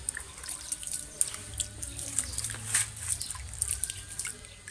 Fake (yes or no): no